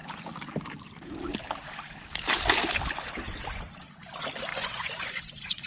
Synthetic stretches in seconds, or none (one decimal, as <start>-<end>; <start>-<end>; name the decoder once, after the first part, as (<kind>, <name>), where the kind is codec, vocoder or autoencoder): 4.5-5.7 (vocoder, Vocos)